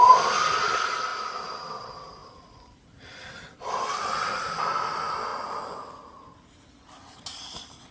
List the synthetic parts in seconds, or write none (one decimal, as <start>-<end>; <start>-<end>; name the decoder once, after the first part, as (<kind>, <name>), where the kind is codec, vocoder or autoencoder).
none